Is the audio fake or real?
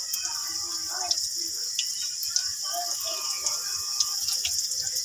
real